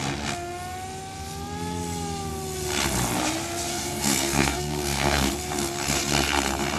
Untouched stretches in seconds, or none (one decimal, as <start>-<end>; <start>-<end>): 0.0-3.7; 5.3-6.8

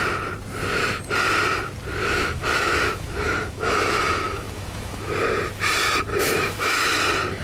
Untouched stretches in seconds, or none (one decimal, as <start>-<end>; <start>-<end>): 0.0-2.0; 5.1-6.1; 6.9-7.4

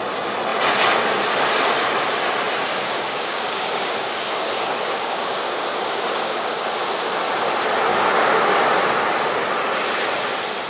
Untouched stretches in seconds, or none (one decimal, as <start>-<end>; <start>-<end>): 0.0-2.7; 6.7-7.9; 8.6-10.7

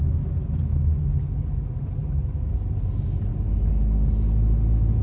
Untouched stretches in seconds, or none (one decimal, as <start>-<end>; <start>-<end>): 0.0-5.0

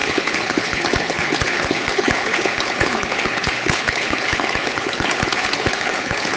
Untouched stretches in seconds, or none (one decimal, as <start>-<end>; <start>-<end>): none